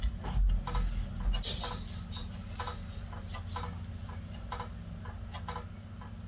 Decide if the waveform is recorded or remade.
recorded